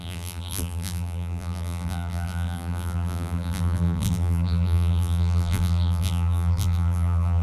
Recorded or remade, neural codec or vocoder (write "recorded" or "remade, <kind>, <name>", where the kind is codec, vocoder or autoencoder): remade, vocoder, BigVGAN v2